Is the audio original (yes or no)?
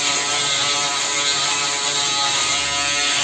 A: yes